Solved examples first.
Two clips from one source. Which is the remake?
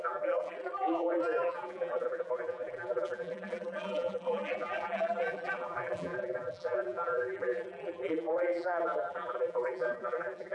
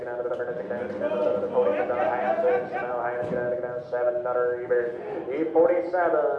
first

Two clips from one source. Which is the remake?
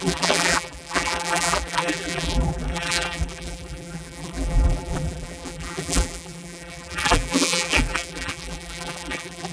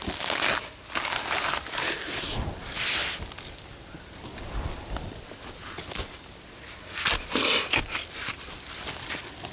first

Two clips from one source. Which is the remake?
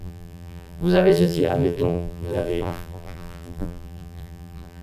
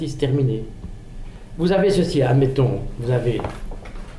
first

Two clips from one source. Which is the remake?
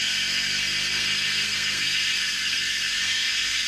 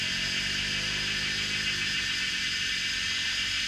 first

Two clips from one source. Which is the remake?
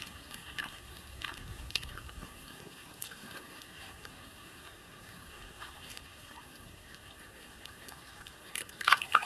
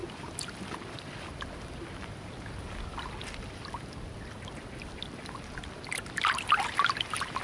first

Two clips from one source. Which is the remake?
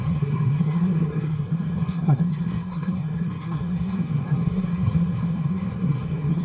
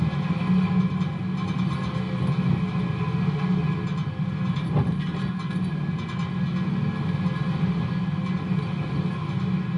first